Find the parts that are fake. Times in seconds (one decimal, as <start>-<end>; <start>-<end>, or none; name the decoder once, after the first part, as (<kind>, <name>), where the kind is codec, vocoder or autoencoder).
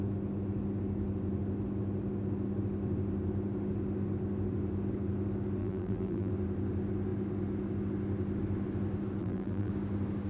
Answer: 5.6-6.3 (vocoder, BigVGAN v2); 9.2-9.7